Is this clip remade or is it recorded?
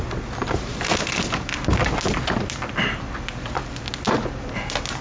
recorded